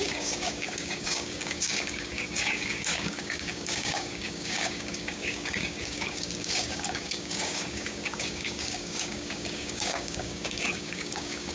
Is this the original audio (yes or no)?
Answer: no